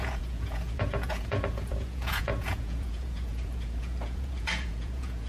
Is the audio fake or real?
fake